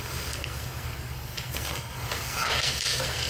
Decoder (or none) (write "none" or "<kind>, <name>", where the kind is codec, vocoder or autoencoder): codec, SNAC